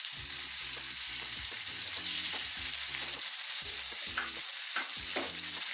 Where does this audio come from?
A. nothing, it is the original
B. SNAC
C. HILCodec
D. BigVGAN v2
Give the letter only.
D